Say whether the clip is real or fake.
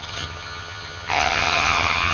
fake